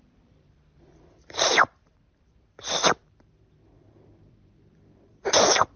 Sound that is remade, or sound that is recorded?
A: remade